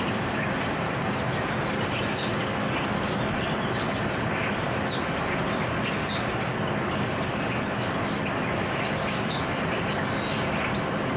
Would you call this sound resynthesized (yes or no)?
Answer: no